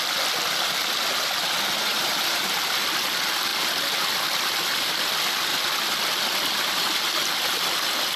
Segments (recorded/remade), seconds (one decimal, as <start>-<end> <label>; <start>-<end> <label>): 0.0-1.9 recorded; 1.9-2.4 remade; 2.4-8.2 recorded